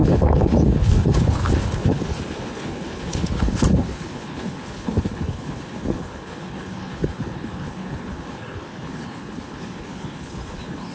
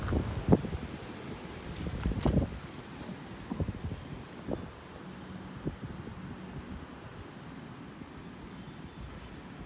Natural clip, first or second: second